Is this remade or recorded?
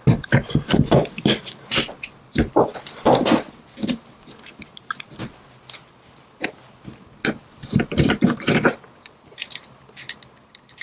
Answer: recorded